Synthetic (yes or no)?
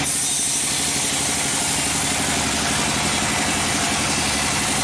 no